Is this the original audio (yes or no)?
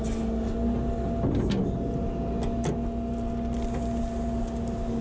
yes